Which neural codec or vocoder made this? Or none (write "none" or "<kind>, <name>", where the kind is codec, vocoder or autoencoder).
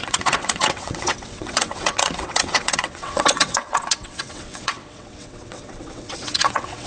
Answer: vocoder, WaveNeXt